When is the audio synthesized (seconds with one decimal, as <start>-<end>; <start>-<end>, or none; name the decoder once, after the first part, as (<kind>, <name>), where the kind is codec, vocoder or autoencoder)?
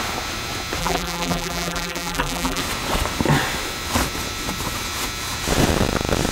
0.8-2.6 (vocoder, BigVGAN v2)